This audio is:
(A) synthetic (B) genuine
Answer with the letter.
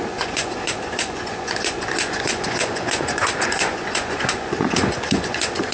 A